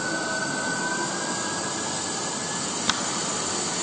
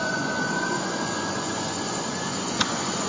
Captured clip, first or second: first